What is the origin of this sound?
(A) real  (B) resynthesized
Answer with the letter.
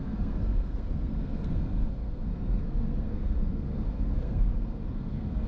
B